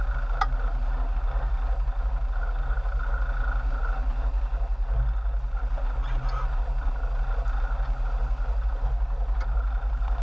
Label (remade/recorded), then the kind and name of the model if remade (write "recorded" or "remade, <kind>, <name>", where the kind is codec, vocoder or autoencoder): recorded